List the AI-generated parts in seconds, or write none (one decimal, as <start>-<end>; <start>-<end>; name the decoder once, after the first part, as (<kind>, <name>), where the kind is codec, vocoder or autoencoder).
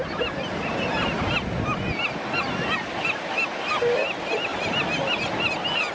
none